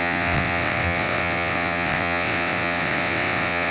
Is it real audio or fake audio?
fake